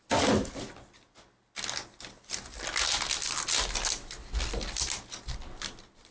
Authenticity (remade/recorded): recorded